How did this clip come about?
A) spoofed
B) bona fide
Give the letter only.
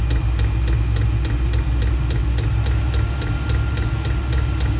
B